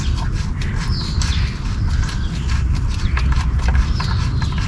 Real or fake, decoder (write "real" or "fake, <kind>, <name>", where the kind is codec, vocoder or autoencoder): real